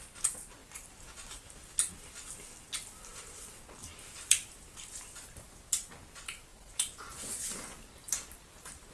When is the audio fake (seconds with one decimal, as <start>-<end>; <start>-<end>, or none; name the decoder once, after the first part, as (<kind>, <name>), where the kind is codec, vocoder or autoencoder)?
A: 6.5-7.5 (vocoder, Vocos)